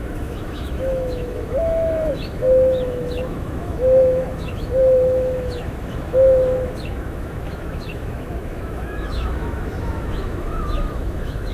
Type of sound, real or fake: fake